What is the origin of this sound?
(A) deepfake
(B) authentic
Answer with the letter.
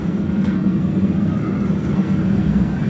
A